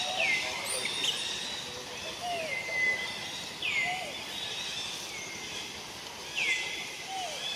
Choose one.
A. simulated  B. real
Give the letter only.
B